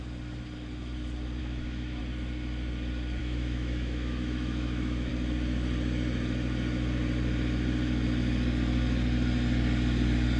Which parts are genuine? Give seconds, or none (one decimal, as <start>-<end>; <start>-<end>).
0.0-1.4; 2.0-3.2; 5.1-10.4